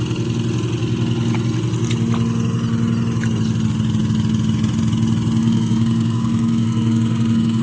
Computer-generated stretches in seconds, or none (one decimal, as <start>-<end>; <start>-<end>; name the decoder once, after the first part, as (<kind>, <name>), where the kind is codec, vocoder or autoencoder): 5.4-7.6 (codec, SNAC)